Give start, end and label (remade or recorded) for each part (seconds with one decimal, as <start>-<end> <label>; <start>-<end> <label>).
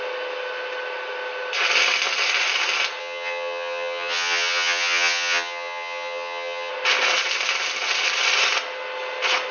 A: 0.0-3.0 recorded; 3.0-6.7 remade; 6.7-9.5 recorded